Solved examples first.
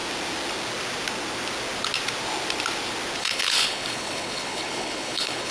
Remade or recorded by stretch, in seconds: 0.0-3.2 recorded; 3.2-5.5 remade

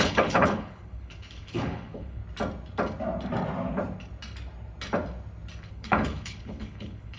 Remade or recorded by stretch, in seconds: 0.0-2.2 remade; 2.2-5.7 recorded; 5.7-7.2 remade

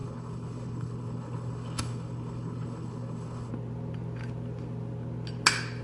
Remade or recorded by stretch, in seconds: 0.0-3.5 remade; 3.5-5.8 recorded

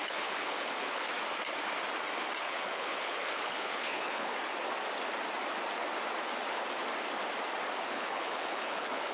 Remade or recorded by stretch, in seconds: 0.0-1.1 remade; 1.1-2.4 recorded; 2.4-4.3 remade; 4.3-7.9 recorded; 7.9-9.1 remade

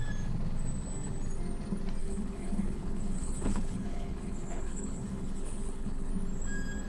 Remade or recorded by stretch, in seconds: 0.0-2.0 recorded; 2.0-6.1 remade; 6.1-6.9 recorded

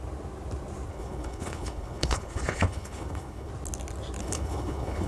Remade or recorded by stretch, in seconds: 0.0-0.9 recorded; 0.9-3.5 remade; 3.5-4.2 recorded; 4.2-5.1 remade

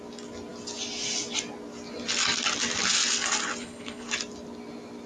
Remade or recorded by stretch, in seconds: 0.0-3.6 recorded; 3.6-4.1 remade; 4.1-5.1 recorded